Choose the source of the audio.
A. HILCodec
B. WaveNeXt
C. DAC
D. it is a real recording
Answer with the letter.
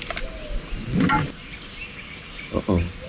D